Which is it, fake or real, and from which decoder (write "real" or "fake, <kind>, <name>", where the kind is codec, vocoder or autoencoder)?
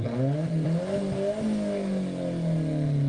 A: real